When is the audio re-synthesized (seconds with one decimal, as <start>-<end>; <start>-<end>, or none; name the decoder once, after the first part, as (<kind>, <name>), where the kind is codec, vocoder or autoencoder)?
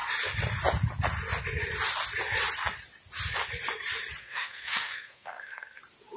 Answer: 4.2-5.8 (codec, SNAC)